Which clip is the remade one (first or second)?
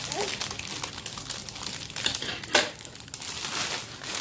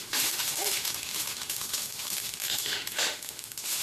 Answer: second